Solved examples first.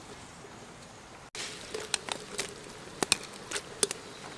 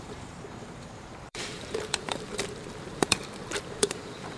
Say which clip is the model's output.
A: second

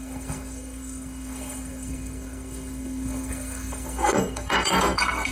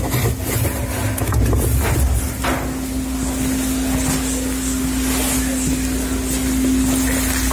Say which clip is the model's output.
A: first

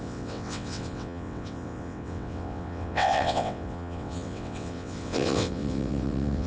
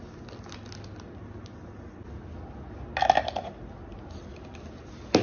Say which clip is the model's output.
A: first